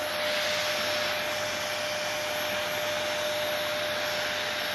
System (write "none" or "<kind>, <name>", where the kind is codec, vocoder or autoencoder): none